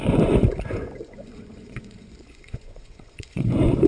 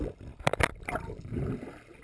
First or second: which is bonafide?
second